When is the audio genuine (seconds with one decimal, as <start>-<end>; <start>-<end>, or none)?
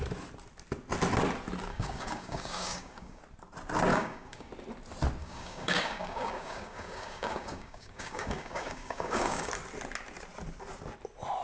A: 0.0-1.7; 3.2-3.9; 4.5-5.2; 9.5-11.4